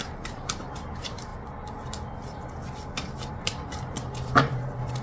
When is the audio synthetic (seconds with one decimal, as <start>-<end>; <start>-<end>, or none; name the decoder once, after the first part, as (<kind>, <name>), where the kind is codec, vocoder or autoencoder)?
0.0-1.3 (vocoder, BigVGAN v2); 3.3-5.0